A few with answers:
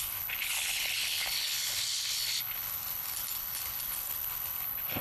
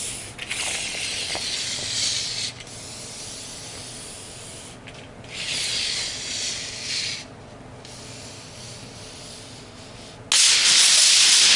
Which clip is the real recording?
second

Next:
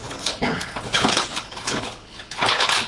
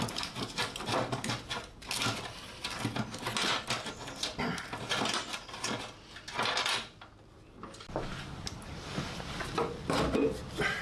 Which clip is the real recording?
second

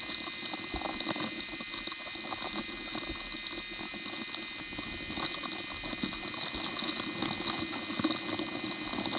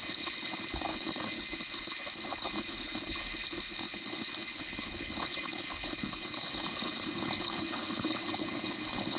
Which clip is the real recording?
first